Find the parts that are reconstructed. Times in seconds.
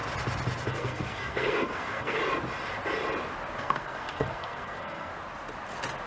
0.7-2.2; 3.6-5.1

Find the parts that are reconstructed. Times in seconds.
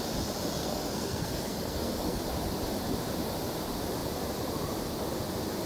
0.6-2.2